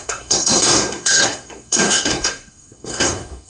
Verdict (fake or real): fake